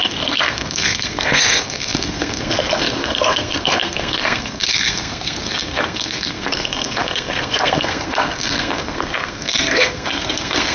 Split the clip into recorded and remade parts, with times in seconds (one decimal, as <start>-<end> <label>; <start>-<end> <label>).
0.0-10.7 remade